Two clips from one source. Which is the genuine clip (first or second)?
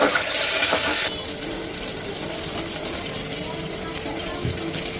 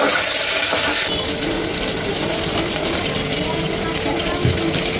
first